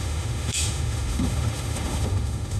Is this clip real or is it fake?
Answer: fake